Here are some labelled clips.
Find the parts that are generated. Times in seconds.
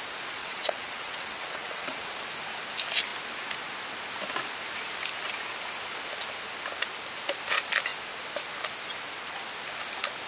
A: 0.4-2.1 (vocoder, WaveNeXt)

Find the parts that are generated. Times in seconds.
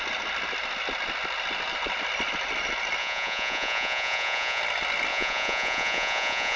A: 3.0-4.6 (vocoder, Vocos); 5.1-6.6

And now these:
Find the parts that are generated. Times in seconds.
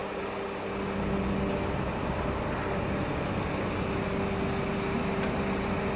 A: none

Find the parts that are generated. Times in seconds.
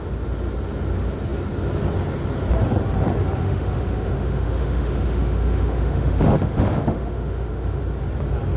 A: 3.4-7.8 (autoencoder, DAC-VAE)